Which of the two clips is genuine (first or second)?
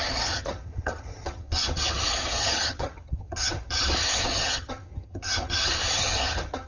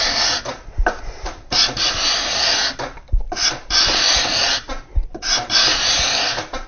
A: second